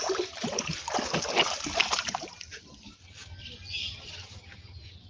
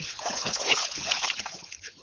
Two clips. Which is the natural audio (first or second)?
first